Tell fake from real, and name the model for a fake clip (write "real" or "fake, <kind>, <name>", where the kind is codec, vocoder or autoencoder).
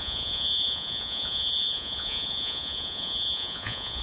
fake, vocoder, Vocos